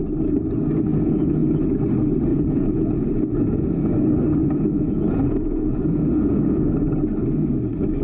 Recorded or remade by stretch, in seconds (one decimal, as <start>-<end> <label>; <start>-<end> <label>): 0.0-0.9 recorded; 0.9-1.6 remade; 1.6-2.3 recorded; 2.3-3.9 remade; 3.9-4.4 recorded; 4.4-6.7 remade; 6.7-8.0 recorded